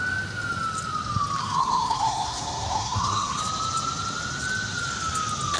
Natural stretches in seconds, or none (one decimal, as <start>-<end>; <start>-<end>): 0.0-1.4; 3.4-5.6